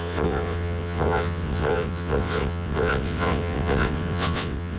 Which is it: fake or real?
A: fake